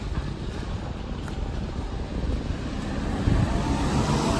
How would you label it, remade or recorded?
remade